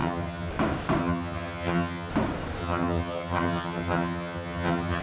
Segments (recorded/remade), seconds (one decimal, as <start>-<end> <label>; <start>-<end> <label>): 0.0-0.5 remade; 0.5-1.0 recorded; 1.0-2.1 remade; 2.1-2.6 recorded; 2.6-5.0 remade